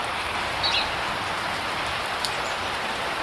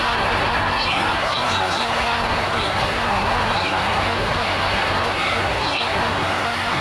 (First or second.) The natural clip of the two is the first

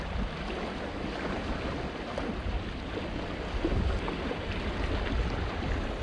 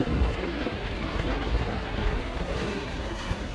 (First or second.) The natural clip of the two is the first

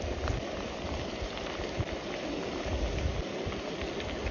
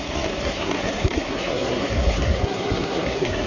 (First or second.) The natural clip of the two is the first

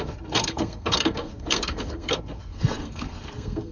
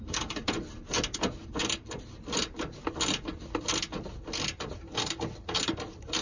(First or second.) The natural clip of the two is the second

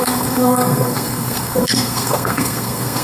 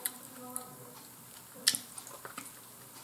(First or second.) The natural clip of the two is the second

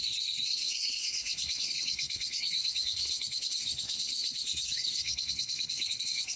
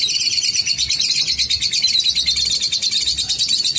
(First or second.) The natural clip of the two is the second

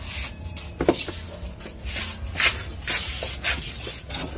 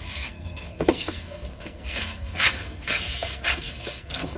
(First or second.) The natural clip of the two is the first